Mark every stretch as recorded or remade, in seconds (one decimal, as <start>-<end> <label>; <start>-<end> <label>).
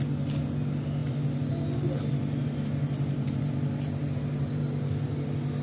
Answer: 0.0-5.6 recorded